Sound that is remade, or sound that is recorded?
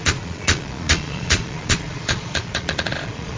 remade